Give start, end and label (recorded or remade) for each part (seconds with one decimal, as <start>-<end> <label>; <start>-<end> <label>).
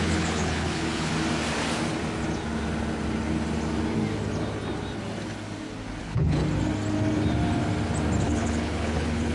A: 0.0-1.1 remade; 1.1-6.0 recorded; 6.0-6.4 remade; 6.4-8.2 recorded; 8.2-9.3 remade